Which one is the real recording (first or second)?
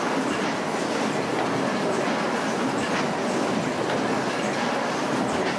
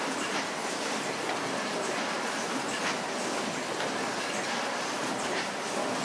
first